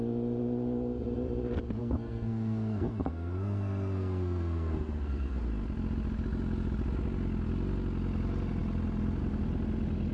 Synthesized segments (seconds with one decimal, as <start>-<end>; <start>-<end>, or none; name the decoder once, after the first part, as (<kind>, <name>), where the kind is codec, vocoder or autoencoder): 1.8-5.4 (codec, SNAC)